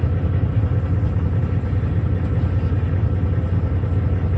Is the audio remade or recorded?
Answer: recorded